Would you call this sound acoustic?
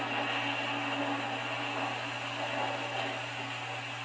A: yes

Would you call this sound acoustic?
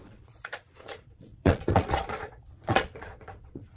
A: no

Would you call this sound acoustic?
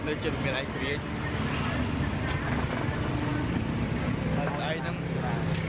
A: yes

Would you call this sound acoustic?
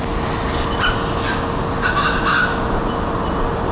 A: yes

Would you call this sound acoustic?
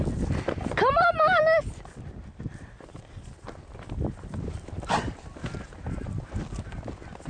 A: yes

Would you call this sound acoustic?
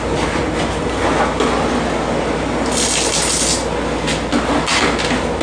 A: yes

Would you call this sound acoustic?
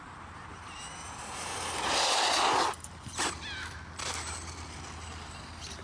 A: yes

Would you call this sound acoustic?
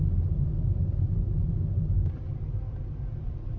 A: yes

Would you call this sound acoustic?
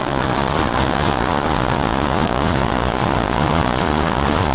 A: no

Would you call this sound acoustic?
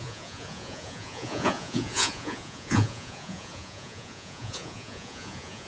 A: no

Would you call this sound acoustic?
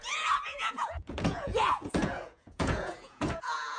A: no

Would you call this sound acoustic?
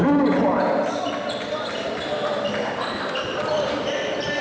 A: yes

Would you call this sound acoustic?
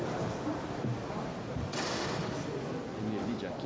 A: yes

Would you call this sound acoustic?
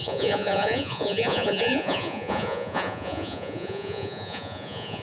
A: no